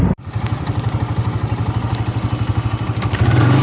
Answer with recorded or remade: recorded